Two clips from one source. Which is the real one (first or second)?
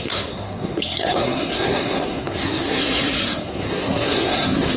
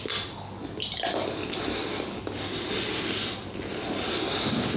second